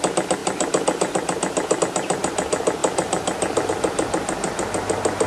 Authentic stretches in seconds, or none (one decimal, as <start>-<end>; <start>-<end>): 0.0-0.4; 1.8-2.8; 3.7-5.3